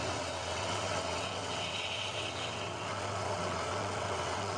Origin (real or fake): fake